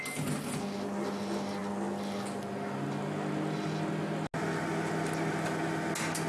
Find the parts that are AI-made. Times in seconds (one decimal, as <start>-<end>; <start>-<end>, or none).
none